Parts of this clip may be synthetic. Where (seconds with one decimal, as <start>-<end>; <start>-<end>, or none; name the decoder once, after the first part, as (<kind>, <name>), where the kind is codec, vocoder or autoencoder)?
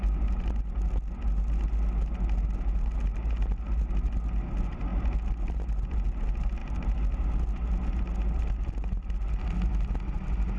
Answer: none